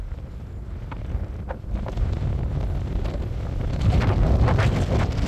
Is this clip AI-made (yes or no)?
no